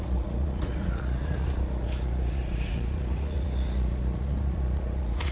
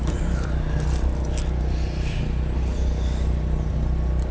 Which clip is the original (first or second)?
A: second